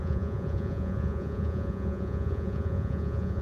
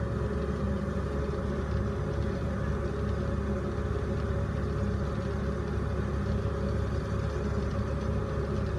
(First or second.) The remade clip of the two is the first